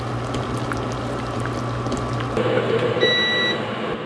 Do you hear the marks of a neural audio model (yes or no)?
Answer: no